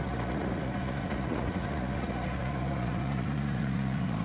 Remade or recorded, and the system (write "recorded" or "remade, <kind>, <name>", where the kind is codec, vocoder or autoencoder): remade, vocoder, Vocos